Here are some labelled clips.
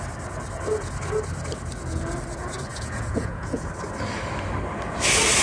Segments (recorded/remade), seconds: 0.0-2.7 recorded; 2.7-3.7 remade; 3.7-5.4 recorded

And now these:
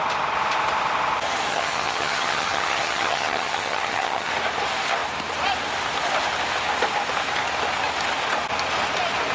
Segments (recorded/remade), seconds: 0.0-1.5 recorded; 1.5-4.3 remade; 4.3-9.3 recorded

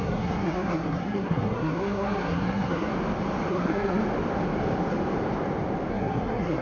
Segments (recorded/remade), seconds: 0.0-2.9 remade; 2.9-3.5 recorded; 3.5-4.0 remade; 4.0-5.9 recorded; 5.9-6.6 remade

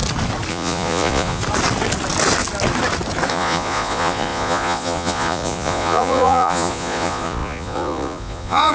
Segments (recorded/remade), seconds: 0.0-0.5 recorded; 0.5-1.4 remade; 1.4-3.3 recorded; 3.3-8.7 remade